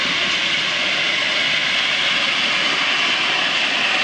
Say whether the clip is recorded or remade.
recorded